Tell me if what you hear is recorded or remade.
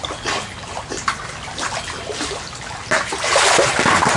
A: recorded